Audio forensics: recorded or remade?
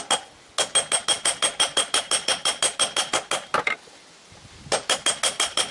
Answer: recorded